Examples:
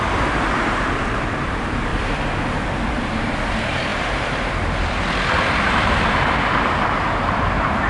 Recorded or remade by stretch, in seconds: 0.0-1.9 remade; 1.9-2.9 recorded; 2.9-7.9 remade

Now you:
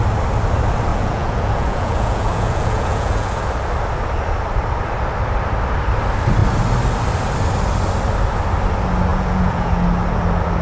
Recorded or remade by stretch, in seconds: 0.0-0.9 recorded; 0.9-3.3 remade; 3.3-9.1 recorded; 9.1-9.7 remade; 9.7-10.6 recorded

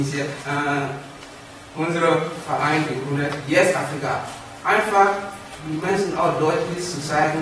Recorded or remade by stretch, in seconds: 0.0-7.4 remade

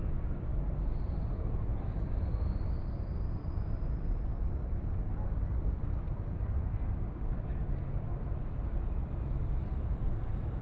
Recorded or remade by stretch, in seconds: 0.0-10.6 recorded

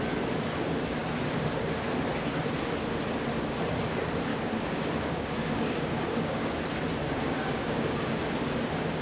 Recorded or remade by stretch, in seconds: 0.0-4.3 recorded; 4.3-6.5 remade; 6.5-7.0 recorded; 7.0-7.8 remade; 7.8-9.0 recorded

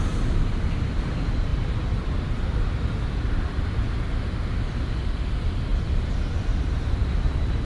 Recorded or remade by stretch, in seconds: 0.0-1.5 recorded; 1.5-3.9 remade; 3.9-5.7 recorded; 5.7-6.6 remade; 6.6-7.6 recorded